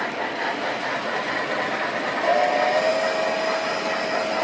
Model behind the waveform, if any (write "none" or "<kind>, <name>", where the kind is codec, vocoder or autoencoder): none